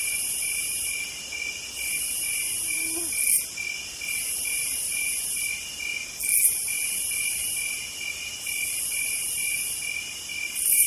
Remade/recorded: recorded